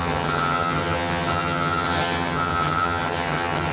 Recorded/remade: remade